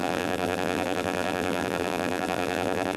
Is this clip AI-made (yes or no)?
yes